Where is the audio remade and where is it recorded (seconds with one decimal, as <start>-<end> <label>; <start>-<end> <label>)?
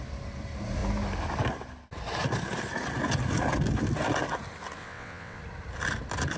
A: 0.0-4.8 recorded; 4.8-5.4 remade; 5.4-6.4 recorded